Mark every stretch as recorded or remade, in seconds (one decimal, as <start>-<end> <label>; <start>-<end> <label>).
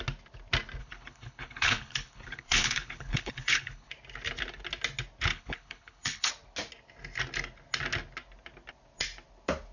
0.0-0.8 recorded; 0.8-3.9 remade; 3.9-5.3 recorded; 5.3-6.3 remade; 6.3-9.7 recorded